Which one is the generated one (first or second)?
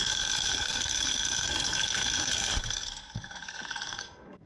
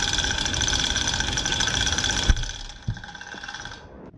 first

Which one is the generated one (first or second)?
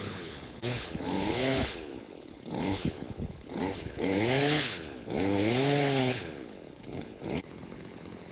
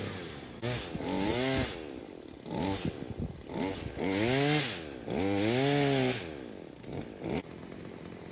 first